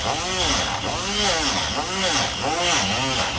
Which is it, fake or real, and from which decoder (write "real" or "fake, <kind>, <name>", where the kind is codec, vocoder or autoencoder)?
real